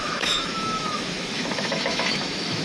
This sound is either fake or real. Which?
fake